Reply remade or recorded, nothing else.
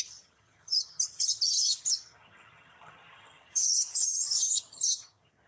remade